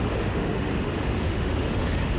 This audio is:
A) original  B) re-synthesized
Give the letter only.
B